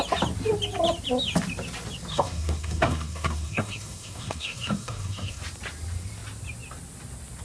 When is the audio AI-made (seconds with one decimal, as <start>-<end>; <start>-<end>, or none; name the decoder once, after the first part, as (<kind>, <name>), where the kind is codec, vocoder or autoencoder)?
2.1-5.4 (codec, SNAC)